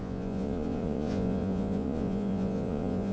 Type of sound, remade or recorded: remade